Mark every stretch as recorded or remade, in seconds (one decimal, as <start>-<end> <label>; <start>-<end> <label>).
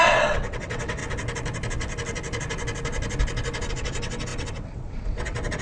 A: 0.0-1.0 remade; 1.0-3.7 recorded; 3.7-5.6 remade